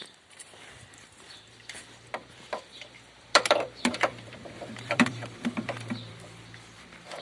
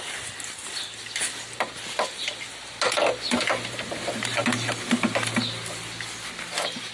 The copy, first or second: first